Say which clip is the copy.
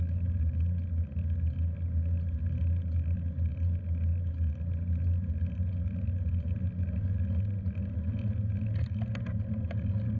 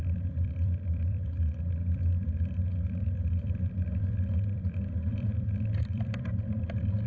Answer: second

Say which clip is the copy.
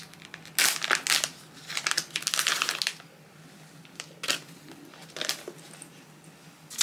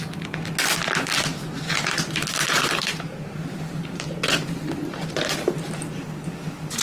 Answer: second